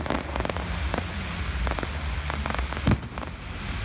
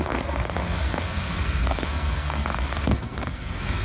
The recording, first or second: first